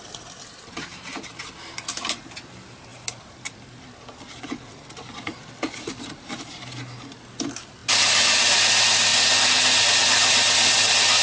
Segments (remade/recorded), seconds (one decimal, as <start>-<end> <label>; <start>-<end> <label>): 0.0-2.9 recorded; 2.9-5.9 remade; 5.9-11.2 recorded